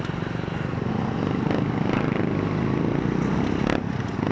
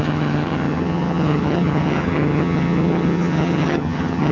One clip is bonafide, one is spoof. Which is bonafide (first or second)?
first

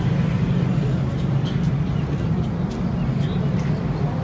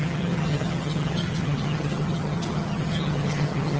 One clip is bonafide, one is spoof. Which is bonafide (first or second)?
first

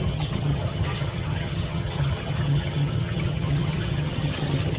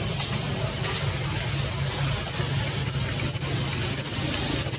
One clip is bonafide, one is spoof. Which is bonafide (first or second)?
second